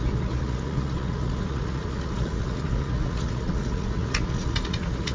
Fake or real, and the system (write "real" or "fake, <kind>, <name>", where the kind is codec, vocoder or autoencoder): fake, vocoder, Vocos